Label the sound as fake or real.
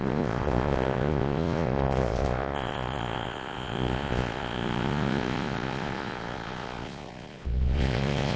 fake